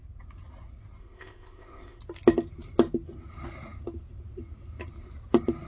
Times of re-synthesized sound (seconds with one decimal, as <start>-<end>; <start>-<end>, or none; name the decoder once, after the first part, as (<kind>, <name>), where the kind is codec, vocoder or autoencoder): 1.0-2.0 (codec, ZipCodec)